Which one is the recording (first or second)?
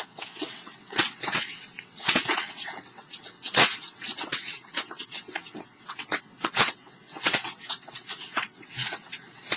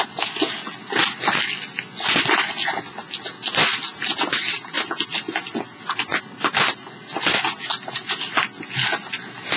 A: second